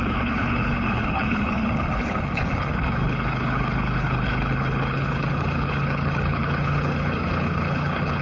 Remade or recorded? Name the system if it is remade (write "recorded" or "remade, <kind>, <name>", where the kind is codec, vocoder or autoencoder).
remade, codec, HILCodec